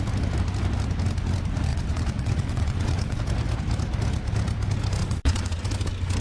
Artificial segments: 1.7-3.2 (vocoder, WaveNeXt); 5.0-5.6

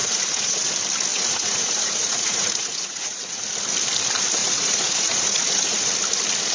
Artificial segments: 0.0-0.7 (vocoder, Vocos); 1.1-3.4; 4.4-5.9